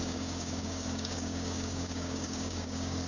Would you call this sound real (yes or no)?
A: no